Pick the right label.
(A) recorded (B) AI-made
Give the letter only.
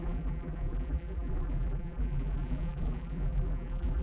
B